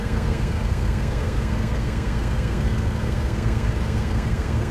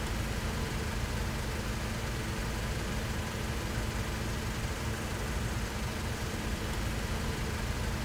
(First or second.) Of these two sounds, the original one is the second